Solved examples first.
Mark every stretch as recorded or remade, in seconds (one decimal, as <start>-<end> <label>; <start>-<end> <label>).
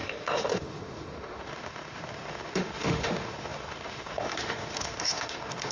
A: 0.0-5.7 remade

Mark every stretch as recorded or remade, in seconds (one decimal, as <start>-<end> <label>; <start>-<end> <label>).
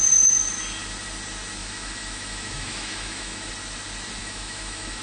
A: 0.0-1.6 recorded; 1.6-3.5 remade; 3.5-4.2 recorded; 4.2-5.0 remade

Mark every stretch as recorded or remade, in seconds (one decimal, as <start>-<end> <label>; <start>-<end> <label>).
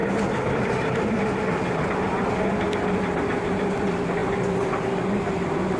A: 0.0-5.8 recorded